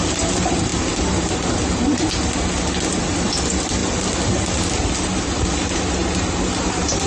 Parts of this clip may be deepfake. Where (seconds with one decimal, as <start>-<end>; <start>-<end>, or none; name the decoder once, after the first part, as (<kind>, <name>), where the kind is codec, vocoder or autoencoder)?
none